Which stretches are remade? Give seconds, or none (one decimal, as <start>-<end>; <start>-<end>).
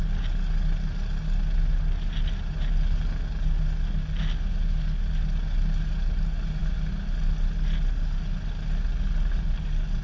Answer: none